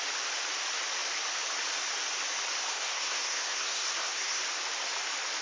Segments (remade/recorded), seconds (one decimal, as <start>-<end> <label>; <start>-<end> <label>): 0.0-2.7 recorded; 2.7-4.4 remade; 4.4-5.4 recorded